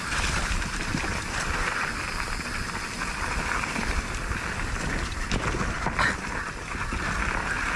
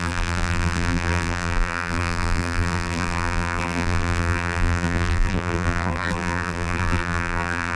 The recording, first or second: first